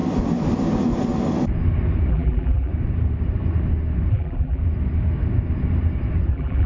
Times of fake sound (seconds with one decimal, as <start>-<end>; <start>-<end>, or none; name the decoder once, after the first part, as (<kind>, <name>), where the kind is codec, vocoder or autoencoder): 2.1-2.7 (vocoder, BigVGAN v2); 4.1-4.6; 6.3-6.7